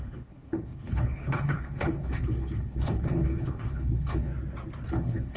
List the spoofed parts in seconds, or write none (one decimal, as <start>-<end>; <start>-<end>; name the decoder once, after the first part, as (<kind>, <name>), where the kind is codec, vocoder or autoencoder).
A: 0.0-4.3 (codec, HILCodec); 4.9-5.4